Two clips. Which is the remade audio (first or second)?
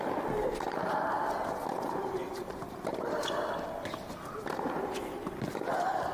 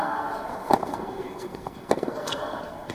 second